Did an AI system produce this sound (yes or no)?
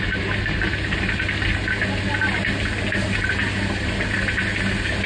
no